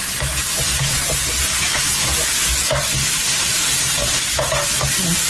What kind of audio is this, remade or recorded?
recorded